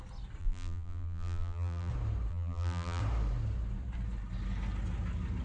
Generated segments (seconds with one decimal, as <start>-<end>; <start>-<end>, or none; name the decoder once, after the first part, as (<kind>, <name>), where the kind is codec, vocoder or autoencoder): 0.4-1.9 (vocoder, BigVGAN v2); 2.3-3.0